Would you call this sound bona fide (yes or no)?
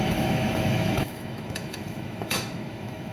no